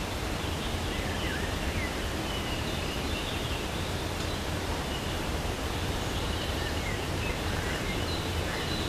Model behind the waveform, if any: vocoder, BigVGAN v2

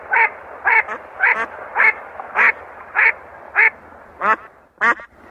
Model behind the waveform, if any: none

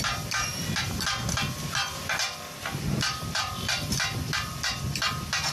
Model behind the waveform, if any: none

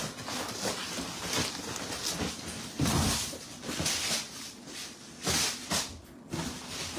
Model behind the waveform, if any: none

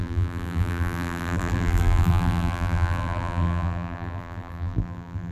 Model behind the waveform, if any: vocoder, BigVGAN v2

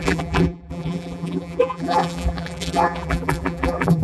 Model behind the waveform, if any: vocoder, BigVGAN v2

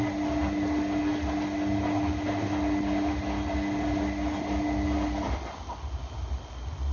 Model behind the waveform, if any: none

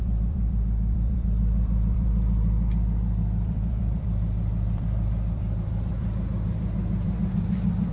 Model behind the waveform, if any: vocoder, BigVGAN v2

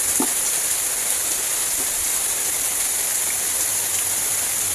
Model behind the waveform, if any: vocoder, BigVGAN v2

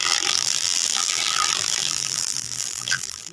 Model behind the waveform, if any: vocoder, BigVGAN v2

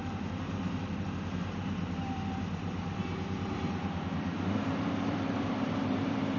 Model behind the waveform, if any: vocoder, BigVGAN v2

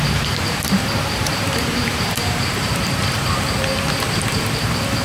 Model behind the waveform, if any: vocoder, BigVGAN v2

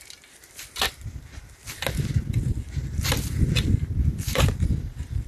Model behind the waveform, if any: vocoder, BigVGAN v2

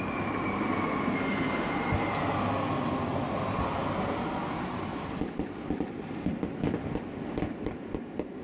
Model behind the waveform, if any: none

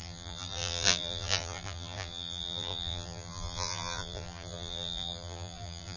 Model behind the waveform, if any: vocoder, BigVGAN v2